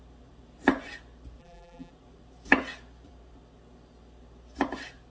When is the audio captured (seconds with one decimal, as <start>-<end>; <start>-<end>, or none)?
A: 0.0-1.4; 1.9-5.1